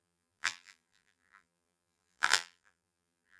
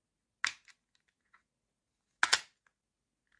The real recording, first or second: second